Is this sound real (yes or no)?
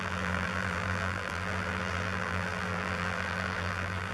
no